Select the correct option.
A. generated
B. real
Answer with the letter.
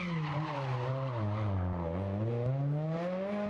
B